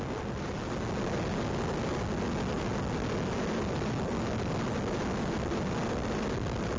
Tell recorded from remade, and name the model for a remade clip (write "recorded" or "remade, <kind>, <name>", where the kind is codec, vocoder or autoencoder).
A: recorded